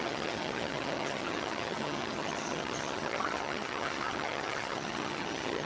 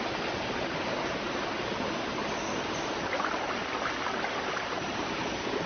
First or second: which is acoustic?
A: second